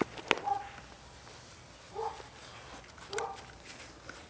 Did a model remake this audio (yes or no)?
no